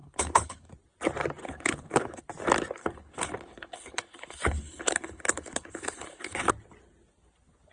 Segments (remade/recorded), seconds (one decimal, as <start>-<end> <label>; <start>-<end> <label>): 0.0-0.7 remade; 0.7-1.4 recorded; 1.4-2.2 remade; 2.2-2.8 recorded; 2.8-6.5 remade; 6.5-7.7 recorded